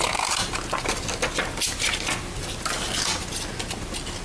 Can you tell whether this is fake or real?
real